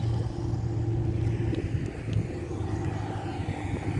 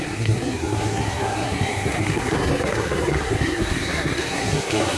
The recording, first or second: first